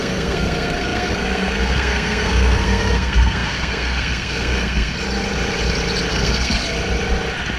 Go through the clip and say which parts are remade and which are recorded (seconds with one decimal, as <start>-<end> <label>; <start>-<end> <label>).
0.0-4.9 remade; 4.9-6.1 recorded; 6.1-6.6 remade; 6.6-7.6 recorded